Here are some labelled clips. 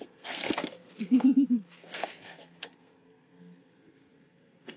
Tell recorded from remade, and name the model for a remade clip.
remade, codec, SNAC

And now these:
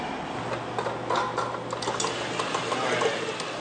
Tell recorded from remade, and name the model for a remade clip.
recorded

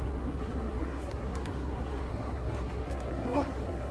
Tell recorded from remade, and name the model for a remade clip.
remade, codec, SNAC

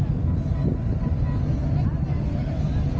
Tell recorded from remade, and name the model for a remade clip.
recorded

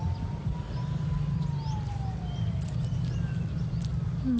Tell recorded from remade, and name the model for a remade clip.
recorded